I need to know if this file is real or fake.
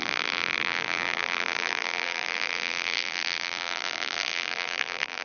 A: fake